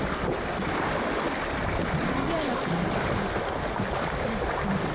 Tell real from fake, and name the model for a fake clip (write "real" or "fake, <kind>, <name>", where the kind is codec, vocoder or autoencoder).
real